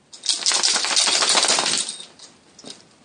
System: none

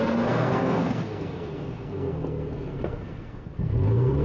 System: codec, SNAC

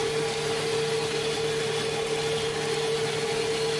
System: none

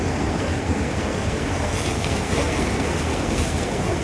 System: codec, SNAC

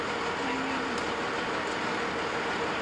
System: none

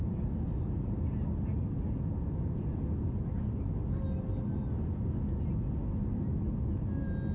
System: none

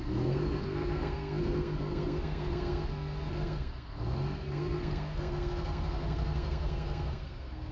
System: codec, SNAC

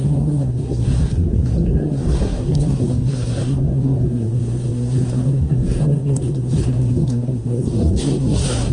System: codec, SNAC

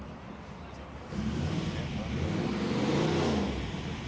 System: none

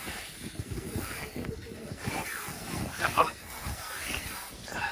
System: codec, SNAC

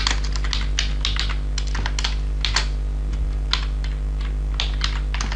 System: none